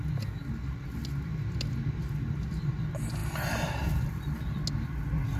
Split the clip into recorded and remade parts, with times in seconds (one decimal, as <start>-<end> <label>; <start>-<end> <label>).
0.0-5.4 recorded

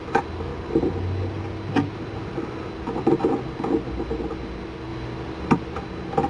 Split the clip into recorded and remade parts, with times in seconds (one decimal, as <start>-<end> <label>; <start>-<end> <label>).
0.0-6.3 recorded

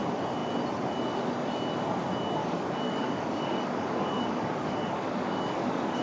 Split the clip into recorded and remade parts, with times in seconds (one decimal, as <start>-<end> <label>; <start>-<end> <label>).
0.0-2.4 recorded; 2.4-6.0 remade

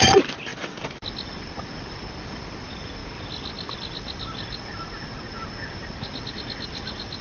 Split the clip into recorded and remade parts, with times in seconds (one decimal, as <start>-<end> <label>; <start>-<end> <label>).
0.0-7.2 recorded

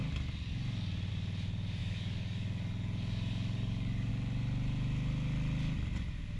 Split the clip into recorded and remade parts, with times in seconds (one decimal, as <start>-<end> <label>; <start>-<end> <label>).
0.0-1.8 recorded; 1.8-4.1 remade; 4.1-6.4 recorded

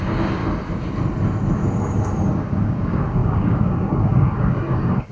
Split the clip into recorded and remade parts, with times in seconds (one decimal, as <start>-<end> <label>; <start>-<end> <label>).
0.0-0.4 remade; 0.4-2.3 recorded; 2.3-5.1 remade

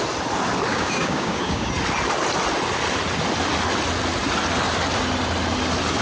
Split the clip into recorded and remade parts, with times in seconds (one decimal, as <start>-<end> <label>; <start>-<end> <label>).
0.0-0.7 recorded; 0.7-1.7 remade; 1.7-6.0 recorded

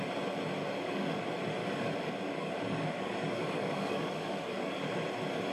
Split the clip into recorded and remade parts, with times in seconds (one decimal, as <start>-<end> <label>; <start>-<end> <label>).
0.0-0.6 recorded; 0.6-1.2 remade; 1.2-1.6 recorded; 1.6-4.9 remade; 4.9-5.5 recorded